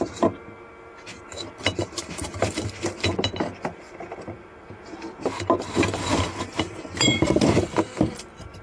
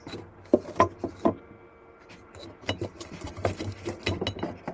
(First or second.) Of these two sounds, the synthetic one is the first